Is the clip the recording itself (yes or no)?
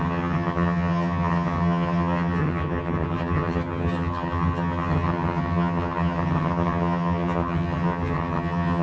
no